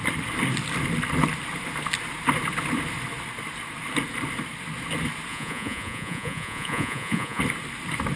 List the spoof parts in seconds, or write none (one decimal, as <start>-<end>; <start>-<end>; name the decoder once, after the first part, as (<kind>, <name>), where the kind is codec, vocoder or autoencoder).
5.3-7.4 (vocoder, Vocos)